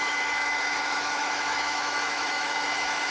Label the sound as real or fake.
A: fake